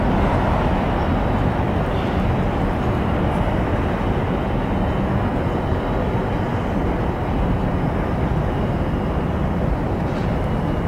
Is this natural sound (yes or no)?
yes